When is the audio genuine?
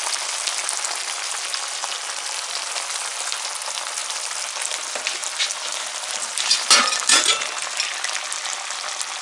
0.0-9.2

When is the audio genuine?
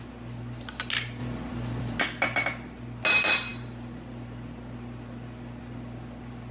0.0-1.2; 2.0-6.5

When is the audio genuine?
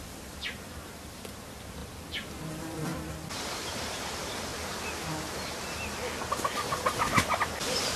1.8-2.4; 4.5-6.3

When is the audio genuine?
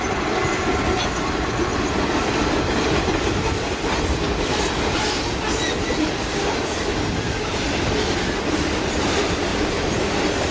0.0-0.4; 5.6-9.5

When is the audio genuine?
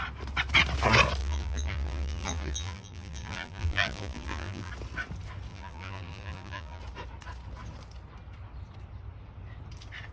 0.0-1.2; 4.7-5.5; 6.8-10.1